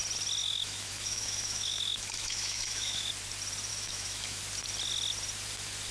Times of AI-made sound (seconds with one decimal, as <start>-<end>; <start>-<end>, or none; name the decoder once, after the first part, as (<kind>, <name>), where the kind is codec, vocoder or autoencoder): 0.4-3.1 (autoencoder, DAC-VAE); 3.7-4.4